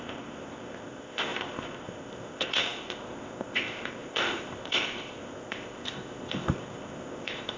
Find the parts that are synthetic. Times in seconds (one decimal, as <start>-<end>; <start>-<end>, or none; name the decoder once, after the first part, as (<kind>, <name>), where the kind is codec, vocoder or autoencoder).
0.0-7.6 (codec, ZipCodec)